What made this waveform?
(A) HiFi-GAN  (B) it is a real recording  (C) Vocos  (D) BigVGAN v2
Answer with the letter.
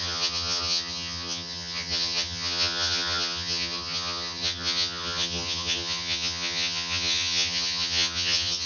A